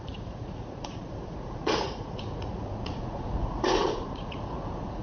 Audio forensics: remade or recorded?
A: remade